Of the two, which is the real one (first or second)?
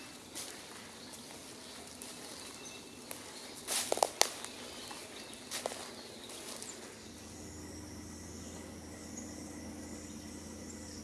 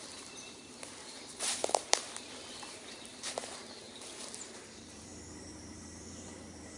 first